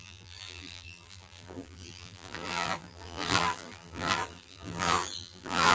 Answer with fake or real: fake